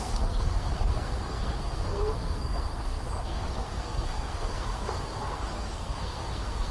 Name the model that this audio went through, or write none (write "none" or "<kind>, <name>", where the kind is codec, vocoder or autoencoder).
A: codec, SNAC